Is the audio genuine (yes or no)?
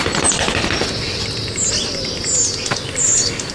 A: yes